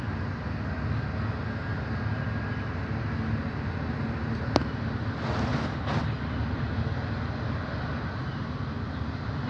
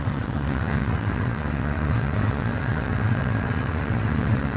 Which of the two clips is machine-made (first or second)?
second